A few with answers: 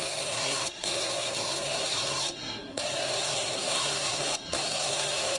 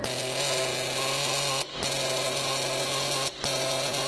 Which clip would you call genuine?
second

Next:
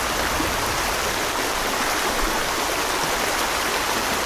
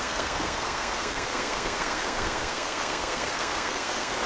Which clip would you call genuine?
first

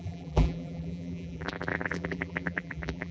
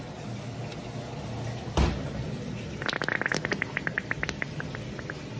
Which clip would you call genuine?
second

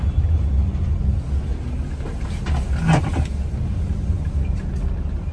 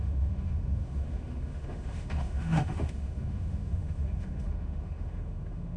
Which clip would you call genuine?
first